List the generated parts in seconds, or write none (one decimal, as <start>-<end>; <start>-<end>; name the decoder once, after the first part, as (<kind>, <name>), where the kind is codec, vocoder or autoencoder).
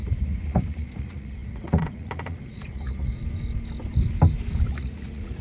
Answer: 0.0-3.2 (vocoder, Vocos); 4.7-5.4